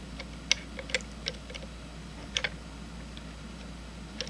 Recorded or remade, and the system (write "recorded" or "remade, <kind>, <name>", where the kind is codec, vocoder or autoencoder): recorded